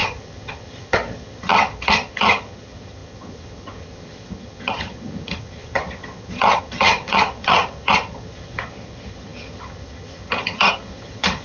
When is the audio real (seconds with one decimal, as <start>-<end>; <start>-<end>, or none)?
none